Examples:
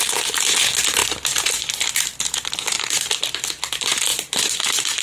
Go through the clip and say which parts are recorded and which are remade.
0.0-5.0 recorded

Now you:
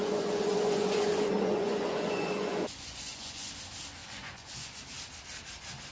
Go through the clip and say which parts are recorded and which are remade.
0.0-3.5 remade; 3.5-4.0 recorded; 4.0-4.8 remade; 4.8-5.9 recorded

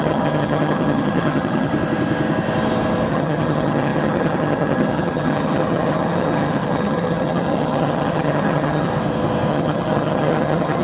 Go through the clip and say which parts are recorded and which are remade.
0.0-1.7 remade; 1.7-3.1 recorded; 3.1-8.9 remade; 8.9-9.5 recorded; 9.5-10.8 remade

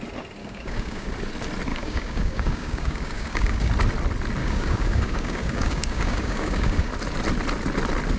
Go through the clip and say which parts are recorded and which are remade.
0.0-0.4 recorded; 0.4-1.1 remade; 1.1-1.7 recorded; 1.7-3.7 remade; 3.7-4.4 recorded; 4.4-6.9 remade; 6.9-8.2 recorded